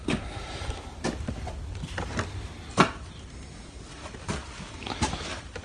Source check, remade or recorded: remade